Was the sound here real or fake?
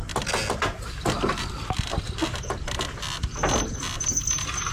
real